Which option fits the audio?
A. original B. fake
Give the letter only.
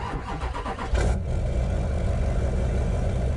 B